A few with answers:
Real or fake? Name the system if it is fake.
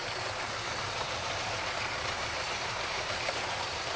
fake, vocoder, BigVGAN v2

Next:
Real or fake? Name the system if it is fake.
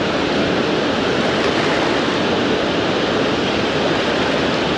real